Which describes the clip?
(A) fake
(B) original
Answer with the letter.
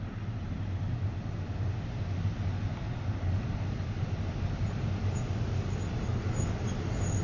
B